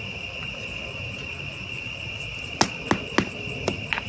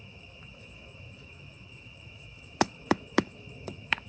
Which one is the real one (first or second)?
first